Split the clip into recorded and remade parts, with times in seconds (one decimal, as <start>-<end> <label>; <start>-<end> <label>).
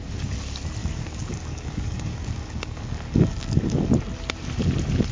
0.0-0.8 recorded; 0.8-3.9 remade; 3.9-5.1 recorded